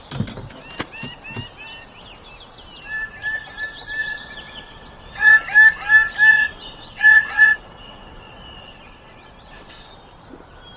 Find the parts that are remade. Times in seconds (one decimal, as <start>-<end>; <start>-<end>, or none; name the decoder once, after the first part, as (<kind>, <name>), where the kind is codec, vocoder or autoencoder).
4.0-5.3 (vocoder, WaveNeXt); 6.3-9.9